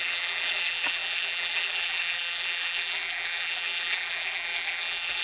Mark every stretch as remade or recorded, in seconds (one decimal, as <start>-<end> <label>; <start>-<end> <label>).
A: 0.0-5.2 remade